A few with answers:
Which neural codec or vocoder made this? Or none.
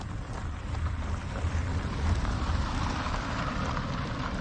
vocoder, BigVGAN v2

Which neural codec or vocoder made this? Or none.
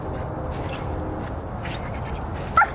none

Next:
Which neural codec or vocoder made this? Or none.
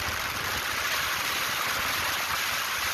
none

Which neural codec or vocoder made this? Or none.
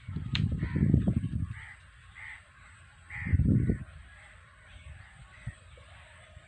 vocoder, BigVGAN v2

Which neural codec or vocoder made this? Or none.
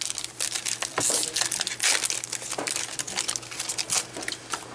none